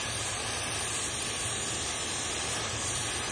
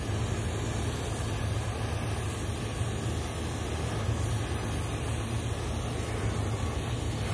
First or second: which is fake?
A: first